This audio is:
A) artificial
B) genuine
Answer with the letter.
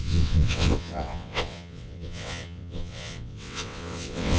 A